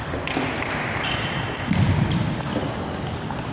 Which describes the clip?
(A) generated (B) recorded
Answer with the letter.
B